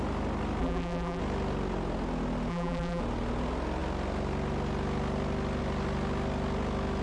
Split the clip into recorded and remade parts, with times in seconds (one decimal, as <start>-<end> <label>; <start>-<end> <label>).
0.0-0.6 recorded; 0.6-1.2 remade; 1.2-2.5 recorded; 2.5-3.0 remade; 3.0-7.0 recorded